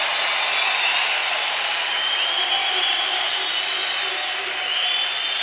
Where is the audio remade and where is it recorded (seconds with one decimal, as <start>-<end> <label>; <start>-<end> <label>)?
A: 0.0-1.2 recorded; 1.2-2.1 remade; 2.1-2.6 recorded; 2.6-3.5 remade; 3.5-5.4 recorded